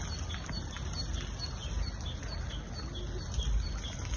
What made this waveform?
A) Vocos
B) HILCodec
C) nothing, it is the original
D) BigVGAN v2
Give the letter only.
C